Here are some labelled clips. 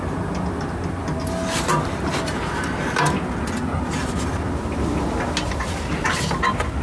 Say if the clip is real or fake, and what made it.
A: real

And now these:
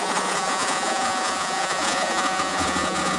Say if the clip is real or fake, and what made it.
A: fake, vocoder, Vocos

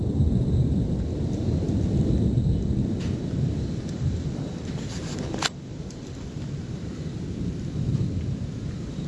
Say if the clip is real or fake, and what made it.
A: fake, vocoder, BigVGAN v2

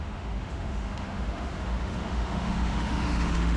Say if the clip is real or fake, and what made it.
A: fake, autoencoder, DAC-VAE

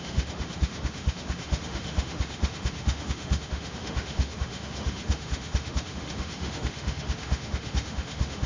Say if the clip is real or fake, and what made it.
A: fake, autoencoder, DAC-VAE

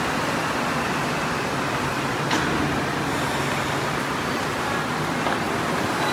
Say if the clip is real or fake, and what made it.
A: real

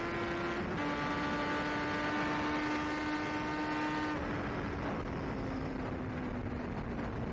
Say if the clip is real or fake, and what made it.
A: real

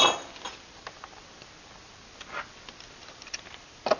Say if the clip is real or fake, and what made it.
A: real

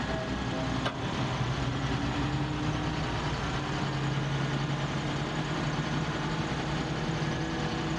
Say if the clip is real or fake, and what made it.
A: real